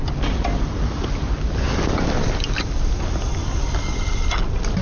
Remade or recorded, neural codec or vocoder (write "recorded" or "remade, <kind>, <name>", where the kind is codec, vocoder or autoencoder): recorded